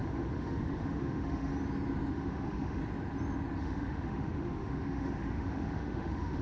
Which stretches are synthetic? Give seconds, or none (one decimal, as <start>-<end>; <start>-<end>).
0.0-1.5; 2.1-2.8; 3.6-6.4